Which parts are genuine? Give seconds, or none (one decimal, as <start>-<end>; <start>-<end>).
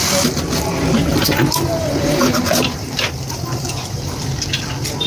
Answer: 0.0-1.1; 4.2-5.1